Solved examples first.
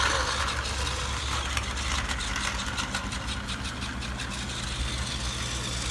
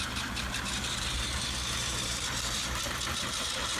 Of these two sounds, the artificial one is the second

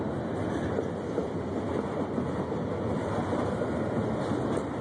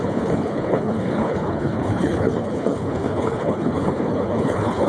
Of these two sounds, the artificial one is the second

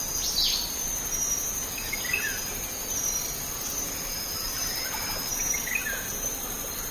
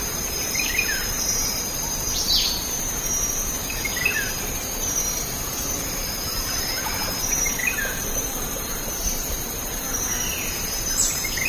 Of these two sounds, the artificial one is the second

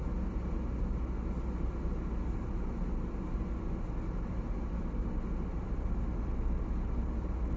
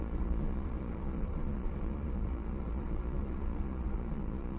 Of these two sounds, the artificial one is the second